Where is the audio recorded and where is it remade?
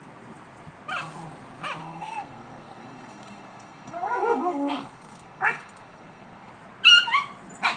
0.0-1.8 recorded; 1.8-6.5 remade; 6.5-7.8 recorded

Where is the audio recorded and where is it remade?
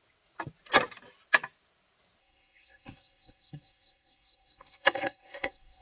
0.0-2.2 recorded; 2.2-5.8 remade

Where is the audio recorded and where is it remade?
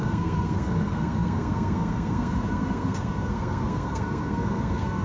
0.0-5.0 remade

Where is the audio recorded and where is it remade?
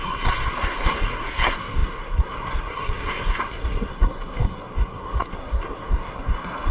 0.0-6.7 remade